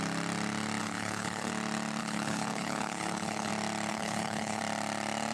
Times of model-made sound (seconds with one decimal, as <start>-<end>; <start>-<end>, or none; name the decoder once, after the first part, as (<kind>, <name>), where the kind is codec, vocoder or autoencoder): 0.8-1.5 (codec, HILCodec); 2.0-3.5; 3.9-4.6